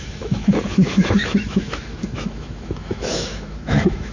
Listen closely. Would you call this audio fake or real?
fake